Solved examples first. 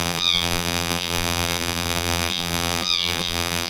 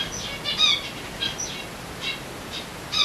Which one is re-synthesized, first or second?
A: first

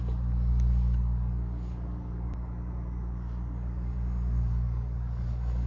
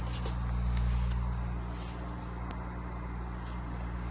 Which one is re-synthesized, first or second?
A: first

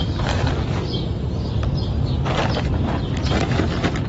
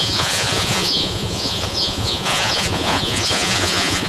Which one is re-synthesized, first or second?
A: second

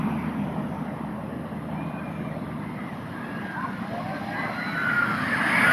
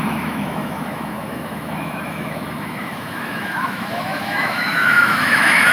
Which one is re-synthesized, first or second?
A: second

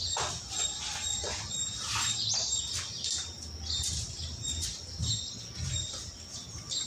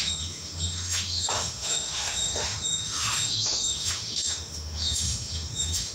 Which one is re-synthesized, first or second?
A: second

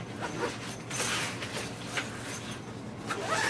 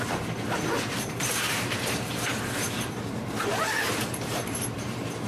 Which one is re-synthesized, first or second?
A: second